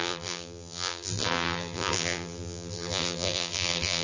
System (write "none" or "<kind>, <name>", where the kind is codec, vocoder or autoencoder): vocoder, BigVGAN v2